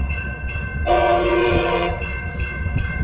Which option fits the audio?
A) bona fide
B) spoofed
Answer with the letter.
B